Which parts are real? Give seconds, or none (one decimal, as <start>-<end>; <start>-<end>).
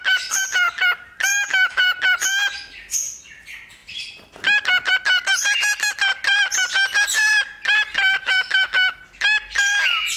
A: 0.0-1.3; 1.8-8.2; 9.0-10.2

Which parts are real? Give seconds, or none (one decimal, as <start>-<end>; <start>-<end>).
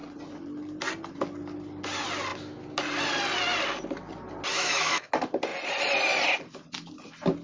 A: 0.0-4.5; 5.1-7.4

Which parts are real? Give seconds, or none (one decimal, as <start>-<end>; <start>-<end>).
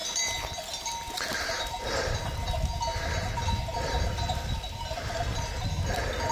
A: 0.0-6.3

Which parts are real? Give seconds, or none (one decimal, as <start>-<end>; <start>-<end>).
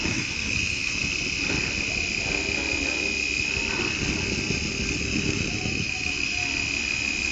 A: 1.0-5.0; 6.4-7.3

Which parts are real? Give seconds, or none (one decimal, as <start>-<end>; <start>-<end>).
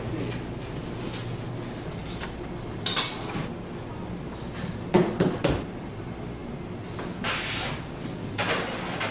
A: 0.0-9.1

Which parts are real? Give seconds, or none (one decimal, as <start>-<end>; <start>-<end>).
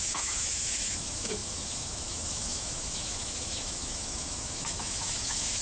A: none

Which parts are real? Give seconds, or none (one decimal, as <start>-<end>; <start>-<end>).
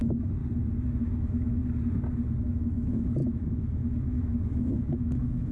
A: 0.4-1.0; 1.6-2.4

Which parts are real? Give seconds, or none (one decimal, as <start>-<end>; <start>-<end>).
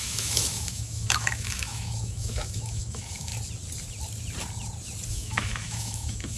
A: 3.3-5.1